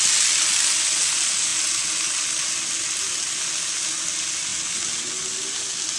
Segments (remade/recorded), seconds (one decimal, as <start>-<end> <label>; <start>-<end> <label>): 0.0-6.0 recorded